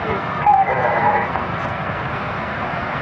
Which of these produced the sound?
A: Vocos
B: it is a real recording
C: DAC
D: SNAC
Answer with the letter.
D